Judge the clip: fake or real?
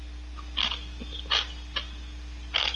real